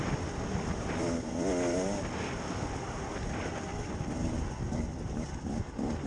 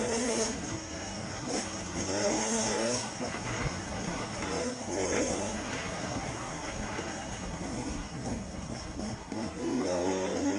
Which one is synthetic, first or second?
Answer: second